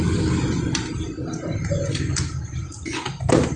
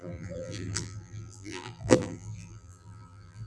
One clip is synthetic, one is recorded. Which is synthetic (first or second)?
second